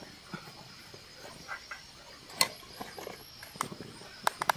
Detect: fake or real real